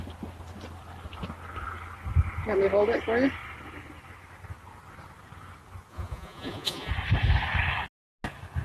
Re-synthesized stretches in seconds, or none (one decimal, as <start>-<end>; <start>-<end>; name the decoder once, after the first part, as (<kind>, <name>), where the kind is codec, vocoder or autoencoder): 5.9-6.9 (vocoder, Vocos)